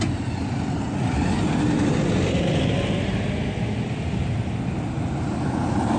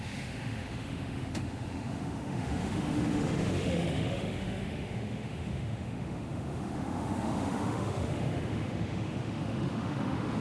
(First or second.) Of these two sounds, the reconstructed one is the second